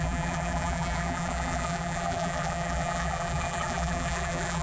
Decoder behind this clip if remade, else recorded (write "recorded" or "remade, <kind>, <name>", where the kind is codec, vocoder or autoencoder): remade, vocoder, BigVGAN v2